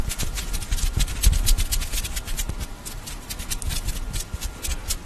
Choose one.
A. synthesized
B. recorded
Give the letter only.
B